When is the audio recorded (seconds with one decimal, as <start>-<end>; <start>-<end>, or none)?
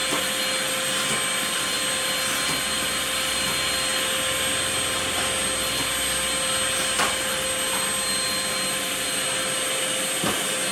0.0-10.7